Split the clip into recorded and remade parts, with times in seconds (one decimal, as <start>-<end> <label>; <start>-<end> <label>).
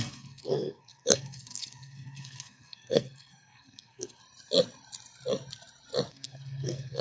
0.0-4.2 remade; 4.2-6.1 recorded; 6.1-7.0 remade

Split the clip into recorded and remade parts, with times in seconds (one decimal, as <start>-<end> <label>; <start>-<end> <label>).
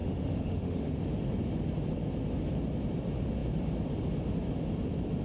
0.0-1.0 remade; 1.0-5.2 recorded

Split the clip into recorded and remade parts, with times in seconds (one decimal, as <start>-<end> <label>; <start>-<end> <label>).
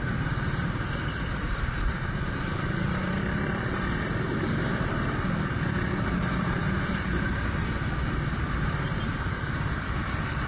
0.0-7.3 remade; 7.3-8.4 recorded; 8.4-10.5 remade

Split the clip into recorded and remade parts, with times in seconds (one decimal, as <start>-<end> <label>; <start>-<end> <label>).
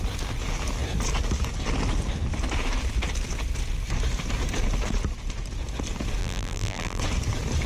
0.0-6.2 recorded; 6.2-7.0 remade; 7.0-7.7 recorded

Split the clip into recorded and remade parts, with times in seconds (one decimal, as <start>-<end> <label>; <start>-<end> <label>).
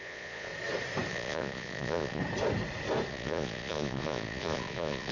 0.0-0.5 remade; 0.5-1.1 recorded; 1.1-2.2 remade; 2.2-3.1 recorded; 3.1-5.1 remade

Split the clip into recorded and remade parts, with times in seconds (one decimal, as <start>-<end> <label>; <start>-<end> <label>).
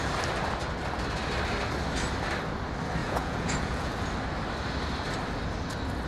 0.0-3.0 recorded; 3.0-3.9 remade; 3.9-6.1 recorded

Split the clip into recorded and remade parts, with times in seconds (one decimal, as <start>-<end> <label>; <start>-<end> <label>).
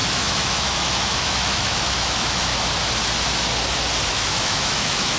0.0-2.5 remade; 2.5-4.1 recorded; 4.1-5.2 remade